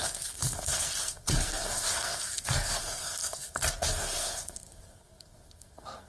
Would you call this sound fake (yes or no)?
yes